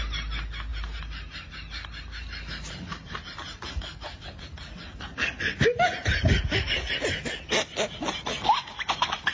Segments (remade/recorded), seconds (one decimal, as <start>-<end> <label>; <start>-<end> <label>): 0.0-9.3 recorded